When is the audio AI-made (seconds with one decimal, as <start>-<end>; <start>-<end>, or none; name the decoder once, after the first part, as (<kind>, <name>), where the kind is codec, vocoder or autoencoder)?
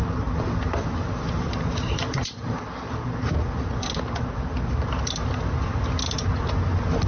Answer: none